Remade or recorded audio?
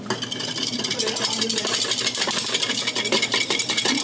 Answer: recorded